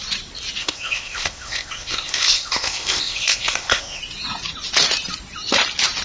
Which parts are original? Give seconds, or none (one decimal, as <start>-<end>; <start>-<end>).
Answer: 0.0-0.6; 4.0-6.0